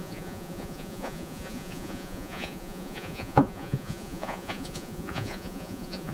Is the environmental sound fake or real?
fake